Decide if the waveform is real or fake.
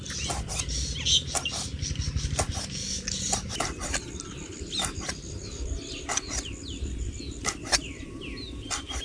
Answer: real